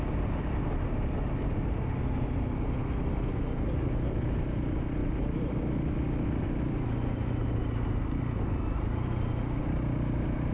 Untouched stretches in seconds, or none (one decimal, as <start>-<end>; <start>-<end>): 0.0-5.0; 5.5-10.5

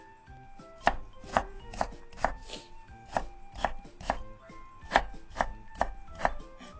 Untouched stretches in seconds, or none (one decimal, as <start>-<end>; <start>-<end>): 0.0-1.3; 2.0-6.8

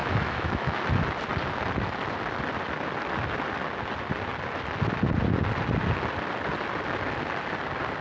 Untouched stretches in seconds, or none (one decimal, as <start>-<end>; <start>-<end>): 0.8-8.0

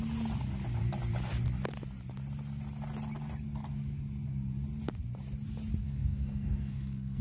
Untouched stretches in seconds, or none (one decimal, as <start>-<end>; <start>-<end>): 0.0-5.8

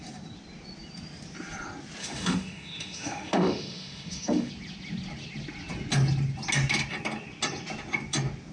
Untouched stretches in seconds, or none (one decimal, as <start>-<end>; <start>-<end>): 0.0-2.0; 4.5-8.5

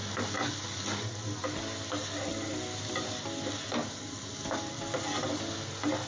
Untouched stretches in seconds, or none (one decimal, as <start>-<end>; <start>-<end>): 0.0-6.1

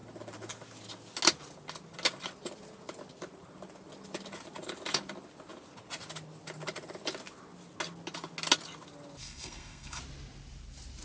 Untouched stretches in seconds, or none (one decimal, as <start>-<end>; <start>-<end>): 0.0-9.2; 10.0-11.0